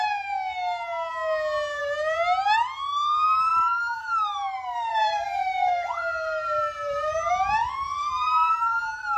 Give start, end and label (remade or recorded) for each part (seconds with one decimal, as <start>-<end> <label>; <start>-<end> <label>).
0.0-3.5 recorded; 3.5-7.3 remade; 7.3-8.0 recorded; 8.0-8.6 remade; 8.6-9.2 recorded